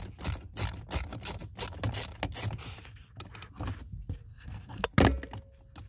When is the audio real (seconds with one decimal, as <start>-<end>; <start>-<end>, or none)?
0.0-4.3; 4.8-5.9